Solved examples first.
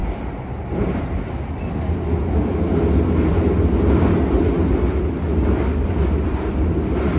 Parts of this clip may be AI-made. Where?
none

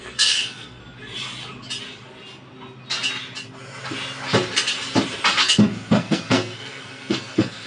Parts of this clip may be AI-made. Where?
0.0-0.8 (codec, SNAC); 5.4-7.7

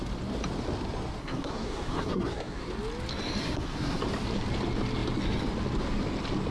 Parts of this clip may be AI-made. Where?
1.2-2.7 (codec, SNAC); 3.4-4.0

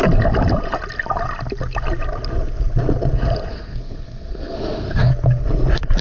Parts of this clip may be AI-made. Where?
3.5-5.1 (codec, SNAC)

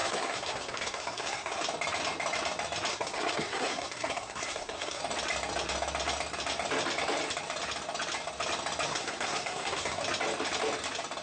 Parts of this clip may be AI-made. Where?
0.0-1.6 (codec, SNAC); 2.9-5.0; 8.9-10.0